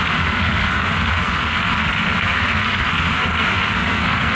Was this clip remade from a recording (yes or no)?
yes